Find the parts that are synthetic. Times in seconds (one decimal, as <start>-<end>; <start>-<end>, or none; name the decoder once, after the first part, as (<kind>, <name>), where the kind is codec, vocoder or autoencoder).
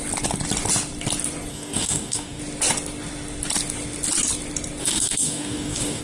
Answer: 1.5-2.4 (codec, DAC); 4.8-6.0